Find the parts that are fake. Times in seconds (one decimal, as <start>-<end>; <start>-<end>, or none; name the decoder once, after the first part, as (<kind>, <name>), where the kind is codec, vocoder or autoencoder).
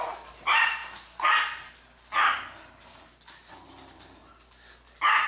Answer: none